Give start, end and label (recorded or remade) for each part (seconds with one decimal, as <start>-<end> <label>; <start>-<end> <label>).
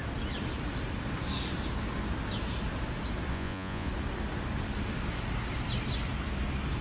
0.0-3.3 recorded; 3.3-3.9 remade; 3.9-6.8 recorded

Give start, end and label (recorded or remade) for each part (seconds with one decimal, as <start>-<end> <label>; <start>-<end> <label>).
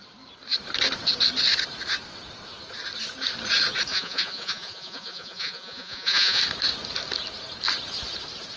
0.0-3.9 recorded; 3.9-6.4 remade; 6.4-8.6 recorded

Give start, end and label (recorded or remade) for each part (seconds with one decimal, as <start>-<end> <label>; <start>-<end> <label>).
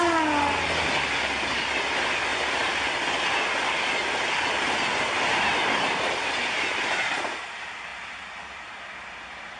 0.0-9.6 recorded